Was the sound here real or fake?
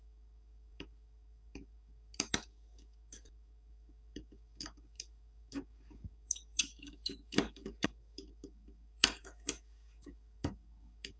fake